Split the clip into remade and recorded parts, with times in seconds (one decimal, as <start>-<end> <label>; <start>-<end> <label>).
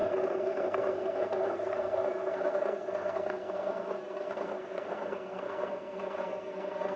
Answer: 0.0-7.0 remade